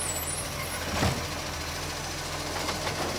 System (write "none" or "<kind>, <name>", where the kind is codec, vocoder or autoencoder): none